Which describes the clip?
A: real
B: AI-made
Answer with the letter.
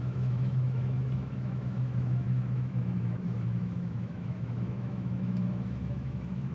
B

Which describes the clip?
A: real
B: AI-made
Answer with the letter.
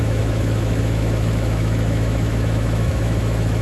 B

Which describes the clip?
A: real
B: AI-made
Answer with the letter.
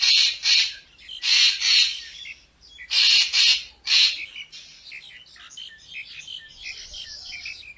A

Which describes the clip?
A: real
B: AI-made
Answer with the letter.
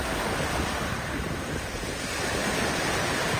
A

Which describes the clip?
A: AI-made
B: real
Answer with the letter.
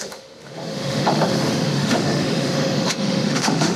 A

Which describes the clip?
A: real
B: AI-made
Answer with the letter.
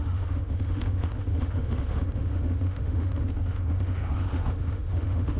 B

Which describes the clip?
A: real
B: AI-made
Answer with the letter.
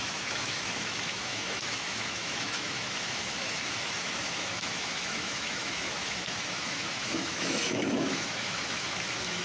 B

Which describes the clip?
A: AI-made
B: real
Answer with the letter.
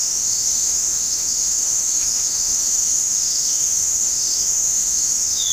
A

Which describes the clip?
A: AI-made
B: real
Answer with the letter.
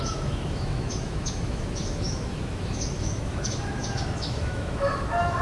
A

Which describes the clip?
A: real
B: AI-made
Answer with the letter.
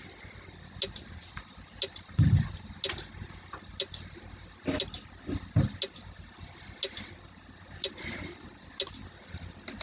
A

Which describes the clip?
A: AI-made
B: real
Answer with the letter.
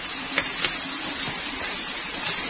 B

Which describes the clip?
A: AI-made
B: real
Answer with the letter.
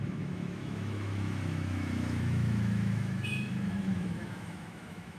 A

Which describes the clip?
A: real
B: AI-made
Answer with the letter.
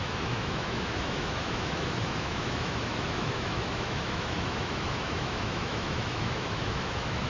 B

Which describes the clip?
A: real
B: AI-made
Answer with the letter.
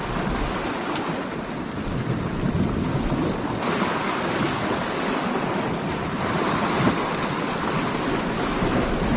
A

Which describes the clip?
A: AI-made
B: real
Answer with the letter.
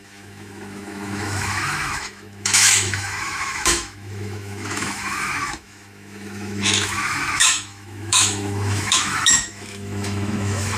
A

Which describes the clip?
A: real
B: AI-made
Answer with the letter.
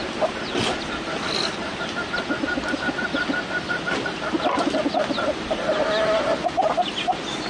A